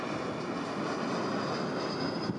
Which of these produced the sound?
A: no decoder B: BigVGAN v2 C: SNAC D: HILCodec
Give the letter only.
A